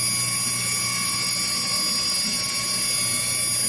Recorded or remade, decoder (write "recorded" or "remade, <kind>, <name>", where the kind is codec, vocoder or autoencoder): recorded